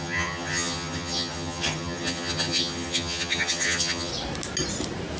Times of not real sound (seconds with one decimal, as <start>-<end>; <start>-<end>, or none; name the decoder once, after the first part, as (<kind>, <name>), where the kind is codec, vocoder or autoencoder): 0.0-4.1 (vocoder, HiFi-GAN)